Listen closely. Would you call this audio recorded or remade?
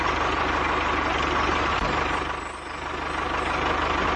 recorded